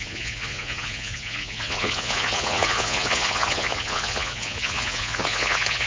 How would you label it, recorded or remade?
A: remade